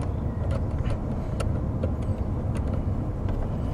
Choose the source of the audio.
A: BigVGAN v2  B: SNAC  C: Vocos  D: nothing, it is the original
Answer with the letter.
D